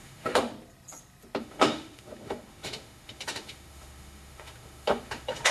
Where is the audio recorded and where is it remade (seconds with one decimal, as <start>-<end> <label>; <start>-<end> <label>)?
0.0-0.5 remade; 0.5-1.4 recorded; 1.4-5.5 remade

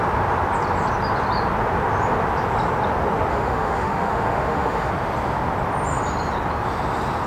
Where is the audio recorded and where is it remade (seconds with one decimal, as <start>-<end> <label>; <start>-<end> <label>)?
0.0-3.3 recorded; 3.3-4.9 remade; 4.9-7.3 recorded

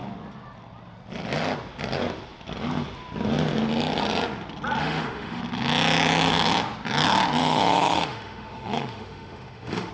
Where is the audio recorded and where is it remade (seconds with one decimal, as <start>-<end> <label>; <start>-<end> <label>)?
0.0-4.8 recorded; 4.8-5.4 remade; 5.4-7.4 recorded; 7.4-9.9 remade

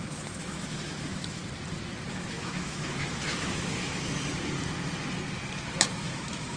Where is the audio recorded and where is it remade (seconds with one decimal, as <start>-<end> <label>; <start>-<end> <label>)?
0.0-1.4 remade; 1.4-2.1 recorded; 2.1-4.1 remade; 4.1-6.0 recorded; 6.0-6.6 remade

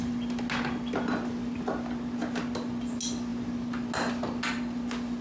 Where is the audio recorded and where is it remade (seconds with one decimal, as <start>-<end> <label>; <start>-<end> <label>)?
0.0-5.2 recorded

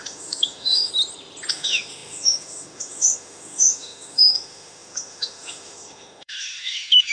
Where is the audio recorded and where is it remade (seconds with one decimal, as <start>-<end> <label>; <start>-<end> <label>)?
0.0-0.9 remade; 0.9-1.5 recorded; 1.5-7.1 remade

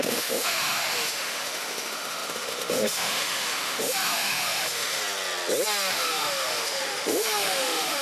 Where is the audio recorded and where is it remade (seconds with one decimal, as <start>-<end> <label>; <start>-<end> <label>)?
0.0-5.0 remade; 5.0-5.9 recorded; 5.9-8.0 remade

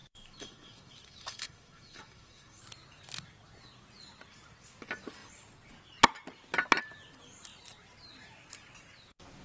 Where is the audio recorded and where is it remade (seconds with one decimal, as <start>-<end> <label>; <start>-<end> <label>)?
0.0-2.6 remade; 2.6-9.4 recorded